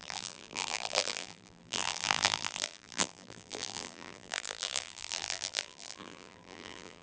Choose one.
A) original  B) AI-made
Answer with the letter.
B